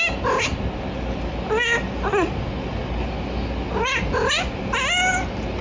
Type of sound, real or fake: real